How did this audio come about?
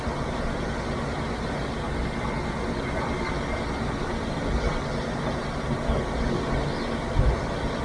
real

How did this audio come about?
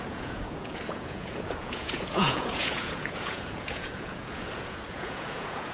fake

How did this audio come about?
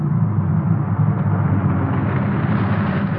real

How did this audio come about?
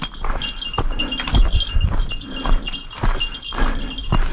real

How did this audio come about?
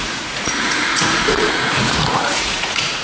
fake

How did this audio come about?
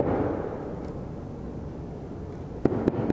real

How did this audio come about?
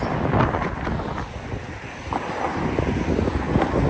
real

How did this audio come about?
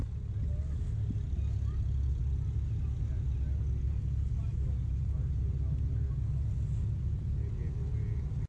real